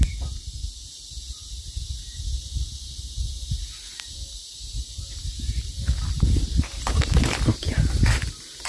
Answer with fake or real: real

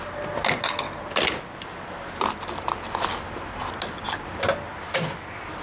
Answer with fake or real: real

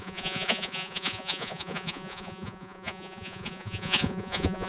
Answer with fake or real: fake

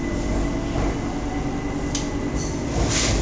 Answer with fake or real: real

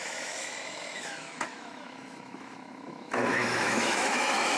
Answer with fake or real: fake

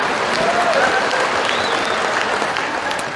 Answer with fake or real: real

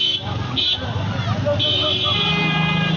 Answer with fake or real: real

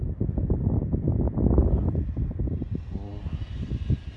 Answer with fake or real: real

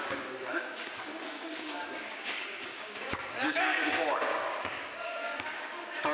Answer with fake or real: fake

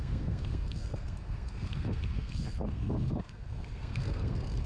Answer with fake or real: fake